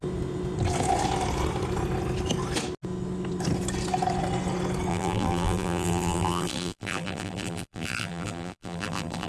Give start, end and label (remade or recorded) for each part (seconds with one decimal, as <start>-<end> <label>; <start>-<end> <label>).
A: 0.0-4.9 recorded; 4.9-9.3 remade